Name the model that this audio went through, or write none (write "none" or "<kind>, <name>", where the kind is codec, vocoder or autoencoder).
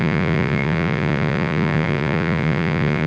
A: vocoder, Vocos